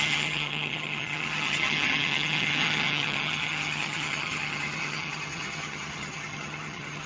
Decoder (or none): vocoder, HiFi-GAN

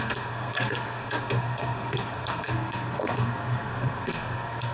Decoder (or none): codec, SNAC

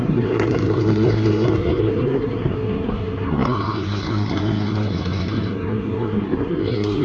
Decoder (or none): codec, SNAC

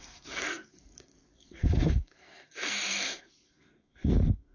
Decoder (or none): codec, SNAC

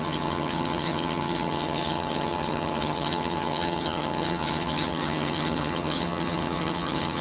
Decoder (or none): vocoder, HiFi-GAN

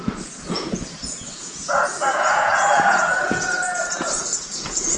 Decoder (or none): vocoder, Vocos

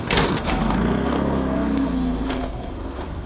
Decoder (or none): codec, SNAC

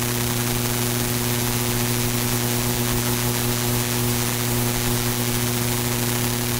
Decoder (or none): none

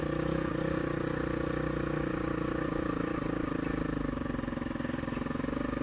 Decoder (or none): none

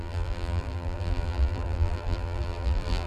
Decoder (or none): vocoder, BigVGAN v2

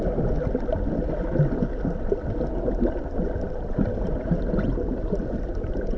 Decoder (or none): none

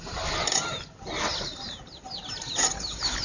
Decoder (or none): none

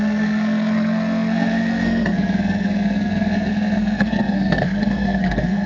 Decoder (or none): codec, SNAC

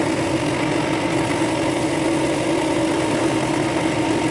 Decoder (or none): none